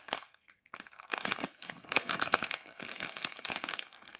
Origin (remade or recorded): remade